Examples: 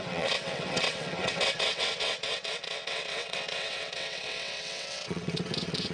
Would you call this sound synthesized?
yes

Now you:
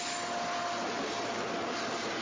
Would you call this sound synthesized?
no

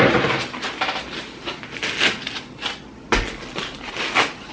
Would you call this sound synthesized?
no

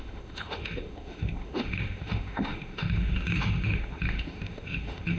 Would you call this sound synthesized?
yes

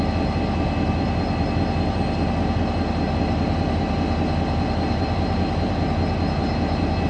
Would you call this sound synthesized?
no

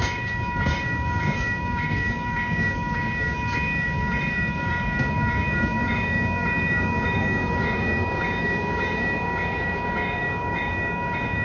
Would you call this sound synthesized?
yes